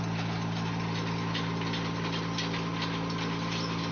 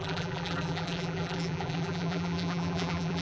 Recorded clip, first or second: first